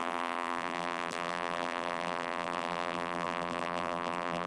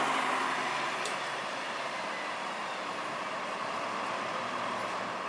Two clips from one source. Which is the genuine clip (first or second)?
second